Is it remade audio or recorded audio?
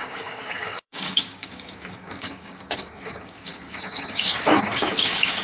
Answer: remade